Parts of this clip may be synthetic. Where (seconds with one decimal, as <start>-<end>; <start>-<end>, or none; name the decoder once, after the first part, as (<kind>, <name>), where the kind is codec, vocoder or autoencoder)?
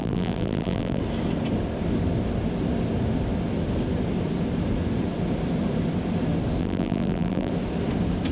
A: 0.0-1.0 (vocoder, BigVGAN v2); 6.6-7.5